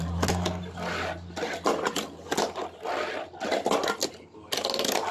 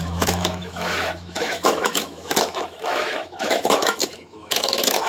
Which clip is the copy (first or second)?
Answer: second